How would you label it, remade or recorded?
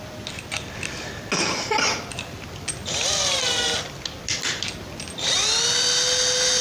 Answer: recorded